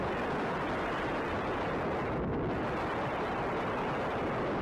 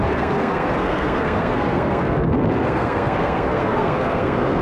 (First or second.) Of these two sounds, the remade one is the second